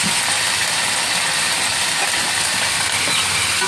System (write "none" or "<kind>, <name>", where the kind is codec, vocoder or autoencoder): none